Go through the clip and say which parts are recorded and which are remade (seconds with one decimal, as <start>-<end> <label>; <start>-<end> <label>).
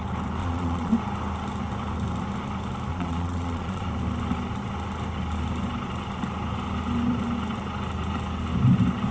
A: 0.0-0.4 recorded; 0.4-0.9 remade; 0.9-2.9 recorded; 2.9-3.9 remade; 3.9-9.1 recorded